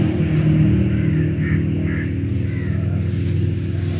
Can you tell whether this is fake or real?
real